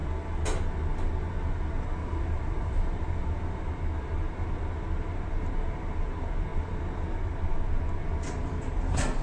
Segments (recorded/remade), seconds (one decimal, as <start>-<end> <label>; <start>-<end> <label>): 0.0-2.0 recorded; 2.0-3.6 remade; 3.6-9.2 recorded

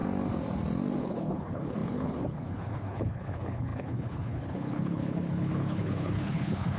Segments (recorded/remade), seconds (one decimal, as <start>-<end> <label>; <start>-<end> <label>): 0.0-1.0 recorded; 1.0-6.8 remade

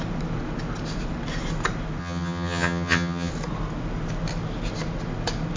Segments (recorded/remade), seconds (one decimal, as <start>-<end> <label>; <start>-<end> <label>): 0.0-2.0 recorded; 2.0-3.3 remade; 3.3-5.6 recorded

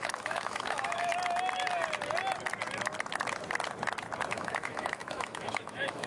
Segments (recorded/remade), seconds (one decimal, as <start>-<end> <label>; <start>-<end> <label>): 0.0-1.1 remade; 1.1-4.3 recorded; 4.3-6.1 remade

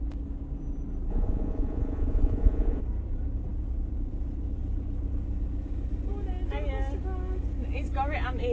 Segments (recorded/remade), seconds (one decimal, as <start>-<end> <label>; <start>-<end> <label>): 0.0-1.1 recorded; 1.1-2.8 remade; 2.8-8.5 recorded

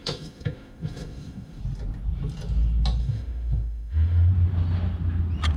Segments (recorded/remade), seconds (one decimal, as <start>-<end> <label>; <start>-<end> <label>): 0.0-1.6 remade; 1.6-3.0 recorded; 3.0-4.3 remade; 4.3-5.6 recorded

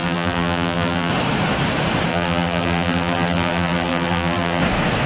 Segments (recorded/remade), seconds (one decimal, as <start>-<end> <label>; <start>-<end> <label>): 0.0-1.1 remade; 1.1-2.1 recorded; 2.1-4.6 remade; 4.6-5.1 recorded

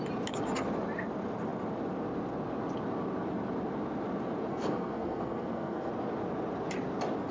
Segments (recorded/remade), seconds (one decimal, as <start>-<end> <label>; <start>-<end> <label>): 0.0-4.5 recorded; 4.5-5.9 remade; 5.9-7.3 recorded